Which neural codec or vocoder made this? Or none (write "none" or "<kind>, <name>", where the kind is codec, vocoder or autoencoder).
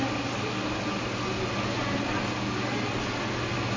none